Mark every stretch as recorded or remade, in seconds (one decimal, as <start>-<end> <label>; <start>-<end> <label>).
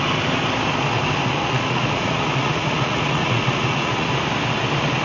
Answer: 0.0-1.4 recorded; 1.4-4.1 remade; 4.1-5.0 recorded